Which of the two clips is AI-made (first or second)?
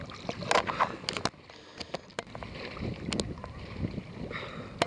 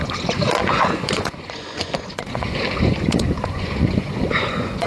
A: second